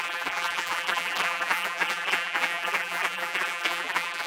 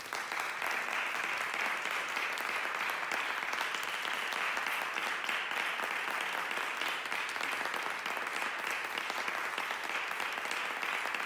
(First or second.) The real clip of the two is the second